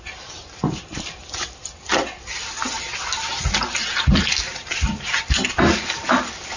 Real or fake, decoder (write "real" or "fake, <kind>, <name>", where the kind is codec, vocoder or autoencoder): real